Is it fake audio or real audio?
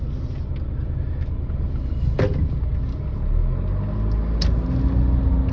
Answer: real